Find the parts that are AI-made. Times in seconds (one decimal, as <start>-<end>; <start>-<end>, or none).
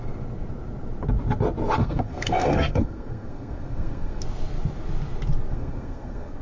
1.8-4.2; 5.5-6.4